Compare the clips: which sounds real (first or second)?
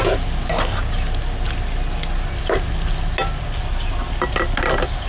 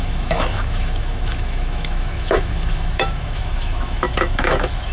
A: first